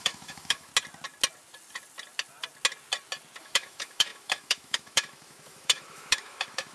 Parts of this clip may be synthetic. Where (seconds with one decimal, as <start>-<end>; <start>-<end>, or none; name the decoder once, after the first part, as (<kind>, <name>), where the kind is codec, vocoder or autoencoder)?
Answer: 0.0-0.7 (autoencoder, DAC-VAE); 3.4-6.7